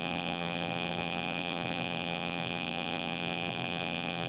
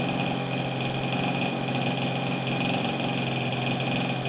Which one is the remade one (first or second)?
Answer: first